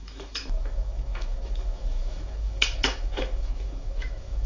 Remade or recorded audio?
remade